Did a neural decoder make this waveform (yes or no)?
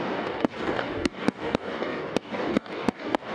yes